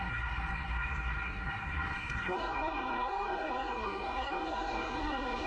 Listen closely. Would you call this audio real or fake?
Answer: fake